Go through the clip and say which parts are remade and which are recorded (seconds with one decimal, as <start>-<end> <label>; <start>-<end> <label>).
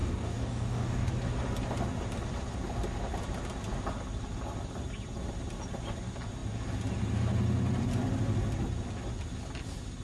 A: 0.0-1.1 remade; 1.1-10.0 recorded